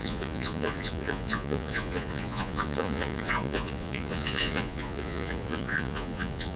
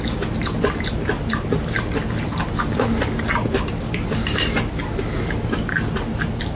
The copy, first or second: first